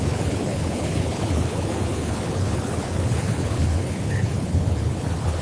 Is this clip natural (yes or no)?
no